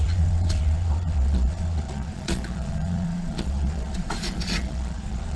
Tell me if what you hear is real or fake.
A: fake